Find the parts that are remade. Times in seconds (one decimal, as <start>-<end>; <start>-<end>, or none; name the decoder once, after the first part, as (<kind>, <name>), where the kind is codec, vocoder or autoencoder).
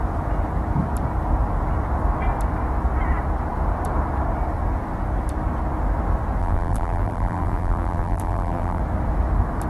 6.4-8.8 (vocoder, BigVGAN v2)